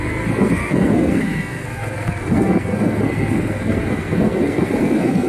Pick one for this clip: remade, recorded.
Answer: remade